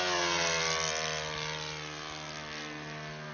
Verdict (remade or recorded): recorded